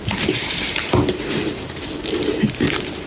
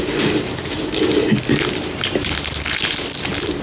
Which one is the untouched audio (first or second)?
second